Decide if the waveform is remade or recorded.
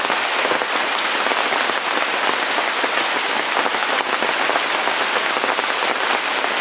recorded